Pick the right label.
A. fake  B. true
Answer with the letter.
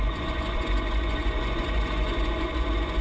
A